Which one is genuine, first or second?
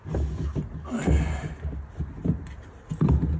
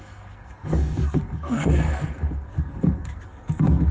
first